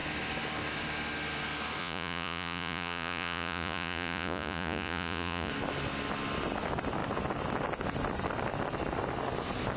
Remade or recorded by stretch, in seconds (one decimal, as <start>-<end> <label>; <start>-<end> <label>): 0.0-1.8 recorded; 1.8-5.5 remade; 5.5-9.8 recorded